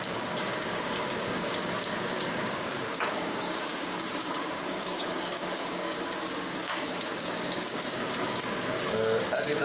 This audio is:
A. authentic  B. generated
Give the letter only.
B